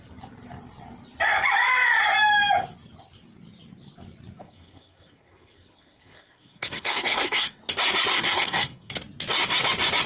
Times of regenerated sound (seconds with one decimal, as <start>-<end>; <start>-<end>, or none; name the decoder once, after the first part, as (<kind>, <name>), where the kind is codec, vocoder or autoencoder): 4.4-7.6 (codec, SNAC); 8.1-8.9